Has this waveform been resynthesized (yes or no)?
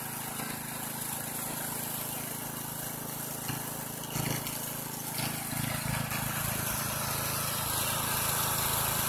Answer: no